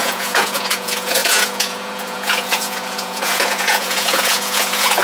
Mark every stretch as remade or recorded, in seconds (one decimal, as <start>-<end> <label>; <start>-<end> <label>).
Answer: 0.0-5.0 remade